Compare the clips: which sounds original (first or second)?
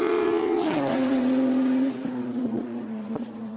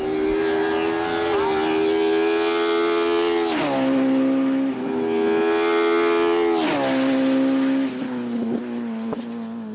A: second